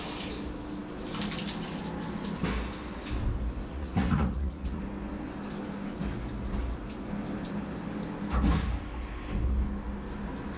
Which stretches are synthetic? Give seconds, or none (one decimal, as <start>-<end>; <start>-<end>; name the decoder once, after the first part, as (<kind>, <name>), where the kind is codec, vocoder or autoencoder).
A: 3.7-4.8 (vocoder, Vocos)